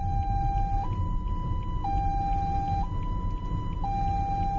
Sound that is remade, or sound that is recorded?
recorded